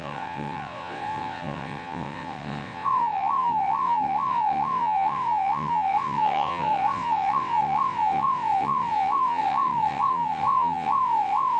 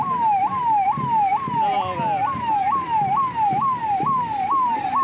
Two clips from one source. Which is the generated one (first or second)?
first